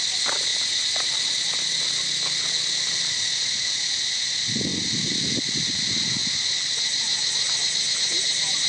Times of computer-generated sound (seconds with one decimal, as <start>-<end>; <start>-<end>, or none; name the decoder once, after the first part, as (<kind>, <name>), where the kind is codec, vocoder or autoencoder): none